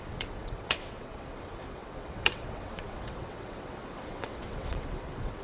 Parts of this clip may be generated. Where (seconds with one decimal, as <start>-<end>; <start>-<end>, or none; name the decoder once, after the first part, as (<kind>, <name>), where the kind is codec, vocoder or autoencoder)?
0.0-5.4 (vocoder, WaveNeXt)